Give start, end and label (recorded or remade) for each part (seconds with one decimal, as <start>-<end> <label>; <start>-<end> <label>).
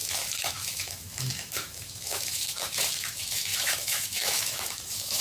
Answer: 0.0-5.2 remade